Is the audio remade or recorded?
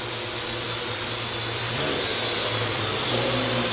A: recorded